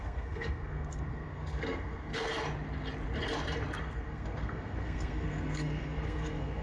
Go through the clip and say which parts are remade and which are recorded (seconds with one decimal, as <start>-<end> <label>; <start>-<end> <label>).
0.0-2.3 remade; 2.3-3.8 recorded; 3.8-6.6 remade